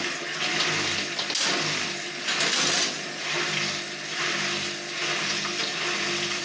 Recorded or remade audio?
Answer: recorded